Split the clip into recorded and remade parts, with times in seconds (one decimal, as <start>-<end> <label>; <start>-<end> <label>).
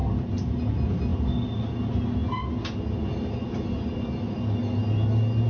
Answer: 0.0-5.5 recorded